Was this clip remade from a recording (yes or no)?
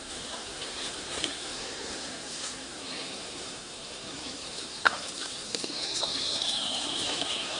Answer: yes